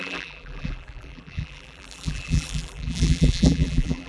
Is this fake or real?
fake